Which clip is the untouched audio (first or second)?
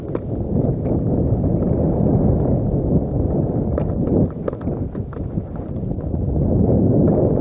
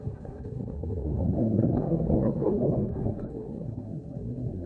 first